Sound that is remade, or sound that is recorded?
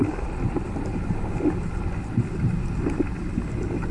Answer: recorded